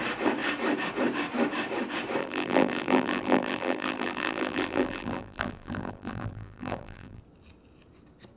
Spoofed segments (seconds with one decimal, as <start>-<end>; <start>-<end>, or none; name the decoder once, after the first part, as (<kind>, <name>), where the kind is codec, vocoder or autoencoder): 2.2-7.2 (vocoder, BigVGAN v2)